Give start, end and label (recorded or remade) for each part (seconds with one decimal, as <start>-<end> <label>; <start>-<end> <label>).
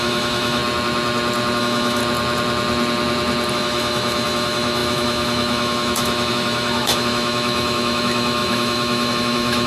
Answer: 0.0-0.6 remade; 0.6-1.6 recorded; 1.6-2.0 remade; 2.0-3.5 recorded; 3.5-9.7 remade